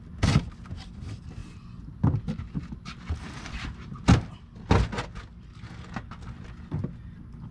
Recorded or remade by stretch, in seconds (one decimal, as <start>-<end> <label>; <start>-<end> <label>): 0.0-7.5 recorded